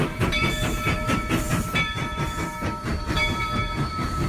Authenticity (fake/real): fake